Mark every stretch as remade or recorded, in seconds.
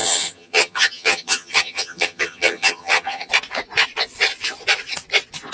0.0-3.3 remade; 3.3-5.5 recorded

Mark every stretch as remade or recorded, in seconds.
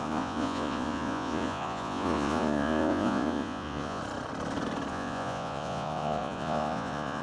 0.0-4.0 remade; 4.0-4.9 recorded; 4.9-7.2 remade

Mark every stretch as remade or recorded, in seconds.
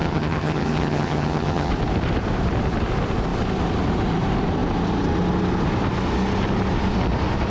0.0-1.7 remade; 1.7-7.5 recorded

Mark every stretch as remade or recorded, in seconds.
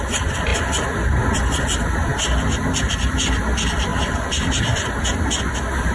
0.0-0.5 recorded; 0.5-1.6 remade; 1.6-3.9 recorded; 3.9-4.8 remade; 4.8-5.9 recorded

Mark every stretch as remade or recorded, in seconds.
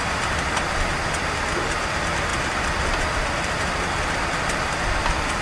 0.0-5.4 remade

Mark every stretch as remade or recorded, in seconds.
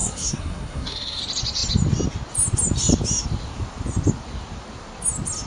0.0-1.2 remade; 1.2-5.5 recorded